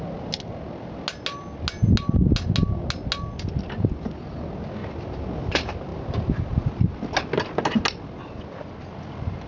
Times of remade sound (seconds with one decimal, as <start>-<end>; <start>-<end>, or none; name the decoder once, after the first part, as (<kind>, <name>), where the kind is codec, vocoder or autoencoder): none